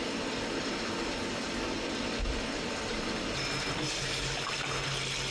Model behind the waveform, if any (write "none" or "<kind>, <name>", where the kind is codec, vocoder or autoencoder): none